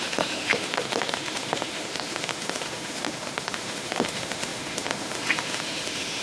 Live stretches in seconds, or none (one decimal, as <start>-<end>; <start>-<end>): none